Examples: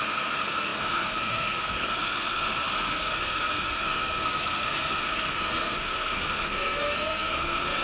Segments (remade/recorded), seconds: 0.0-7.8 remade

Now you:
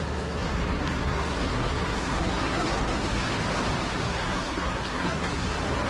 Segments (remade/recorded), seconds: 0.0-3.4 remade; 3.4-4.0 recorded; 4.0-5.9 remade

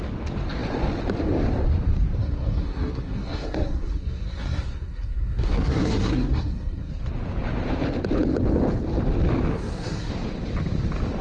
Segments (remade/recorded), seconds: 0.0-2.2 recorded; 2.2-6.9 remade; 6.9-9.5 recorded; 9.5-10.1 remade; 10.1-11.2 recorded